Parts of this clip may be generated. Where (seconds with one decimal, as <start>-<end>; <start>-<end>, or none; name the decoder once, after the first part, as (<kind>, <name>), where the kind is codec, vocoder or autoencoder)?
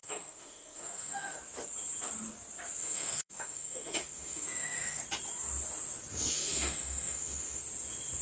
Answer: 0.0-1.4 (autoencoder, DAC-VAE); 2.8-5.0; 6.1-7.6